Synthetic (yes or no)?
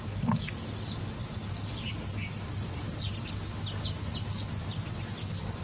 no